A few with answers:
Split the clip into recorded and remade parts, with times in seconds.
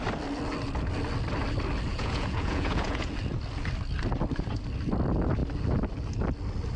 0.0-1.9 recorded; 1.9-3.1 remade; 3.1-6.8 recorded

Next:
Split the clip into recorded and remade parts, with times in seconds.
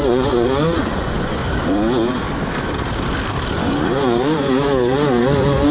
0.0-1.4 remade; 1.4-3.5 recorded; 3.5-5.7 remade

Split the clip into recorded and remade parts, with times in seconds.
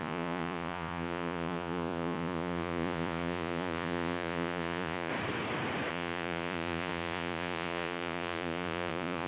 0.0-5.1 remade; 5.1-5.9 recorded; 5.9-9.3 remade